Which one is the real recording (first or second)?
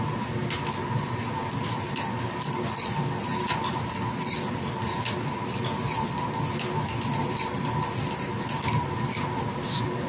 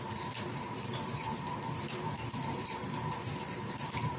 first